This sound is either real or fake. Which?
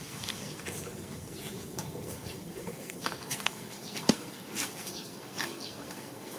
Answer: fake